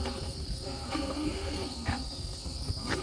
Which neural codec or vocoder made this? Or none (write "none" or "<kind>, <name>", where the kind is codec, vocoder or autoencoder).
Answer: codec, SNAC